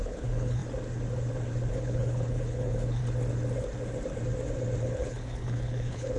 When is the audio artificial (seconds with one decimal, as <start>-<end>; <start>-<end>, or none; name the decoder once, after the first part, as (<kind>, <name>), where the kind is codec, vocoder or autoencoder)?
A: 0.0-0.6 (codec, HILCodec); 1.7-3.0; 4.8-6.2